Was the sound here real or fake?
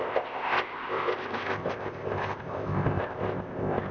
fake